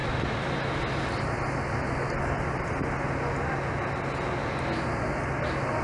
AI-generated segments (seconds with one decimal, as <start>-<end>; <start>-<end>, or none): none